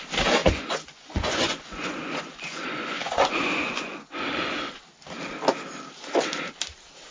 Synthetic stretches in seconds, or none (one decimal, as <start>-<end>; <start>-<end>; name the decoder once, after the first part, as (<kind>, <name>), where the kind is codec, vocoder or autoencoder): 0.4-4.7 (vocoder, Vocos)